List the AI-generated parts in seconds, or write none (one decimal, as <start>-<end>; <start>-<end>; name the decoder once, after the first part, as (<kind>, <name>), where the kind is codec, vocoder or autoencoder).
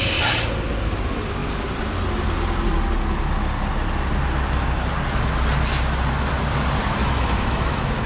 7.0-8.1 (autoencoder, DAC-VAE)